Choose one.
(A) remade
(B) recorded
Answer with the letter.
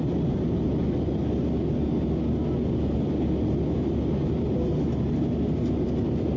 B